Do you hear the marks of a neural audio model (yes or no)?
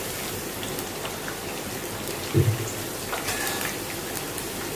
yes